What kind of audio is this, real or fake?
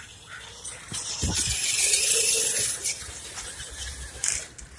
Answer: real